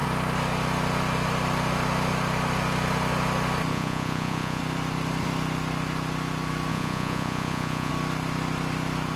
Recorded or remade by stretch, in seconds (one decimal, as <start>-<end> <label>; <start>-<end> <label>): 0.0-3.7 recorded; 3.7-4.6 remade; 4.6-6.7 recorded; 6.7-7.9 remade; 7.9-9.2 recorded